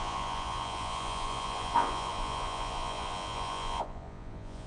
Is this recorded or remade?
remade